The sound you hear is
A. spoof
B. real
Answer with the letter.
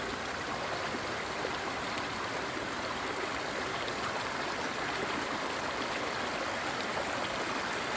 B